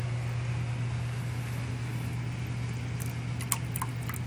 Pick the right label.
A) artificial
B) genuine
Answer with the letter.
B